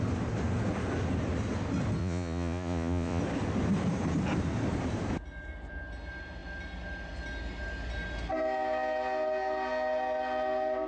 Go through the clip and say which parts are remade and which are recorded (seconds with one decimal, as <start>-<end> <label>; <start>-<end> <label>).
0.0-2.0 recorded; 2.0-3.2 remade; 3.2-10.9 recorded